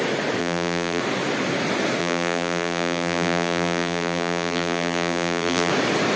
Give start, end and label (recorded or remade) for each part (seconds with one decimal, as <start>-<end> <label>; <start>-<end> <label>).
0.0-0.4 recorded; 0.4-1.0 remade; 1.0-2.0 recorded; 2.0-5.7 remade; 5.7-6.2 recorded